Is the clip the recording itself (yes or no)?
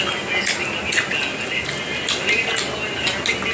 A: yes